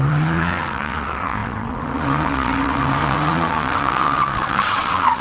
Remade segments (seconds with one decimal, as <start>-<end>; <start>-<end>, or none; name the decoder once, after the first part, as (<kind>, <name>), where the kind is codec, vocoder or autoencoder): 0.0-5.2 (vocoder, WaveNeXt)